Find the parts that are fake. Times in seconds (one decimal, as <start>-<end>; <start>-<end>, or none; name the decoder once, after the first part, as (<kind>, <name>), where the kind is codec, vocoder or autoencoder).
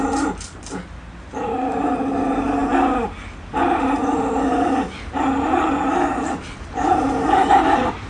none